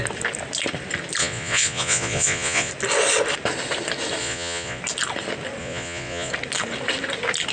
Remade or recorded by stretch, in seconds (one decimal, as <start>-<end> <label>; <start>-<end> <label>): 0.0-1.2 recorded; 1.2-2.7 remade; 2.7-4.2 recorded; 4.2-4.8 remade; 4.8-5.6 recorded; 5.6-6.3 remade; 6.3-7.5 recorded